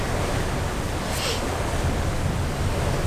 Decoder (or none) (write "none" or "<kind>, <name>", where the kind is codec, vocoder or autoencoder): none